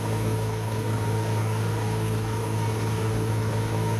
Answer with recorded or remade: remade